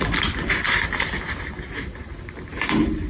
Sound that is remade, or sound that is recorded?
recorded